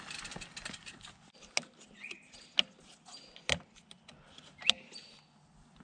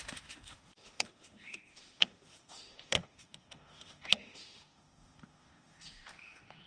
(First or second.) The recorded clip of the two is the first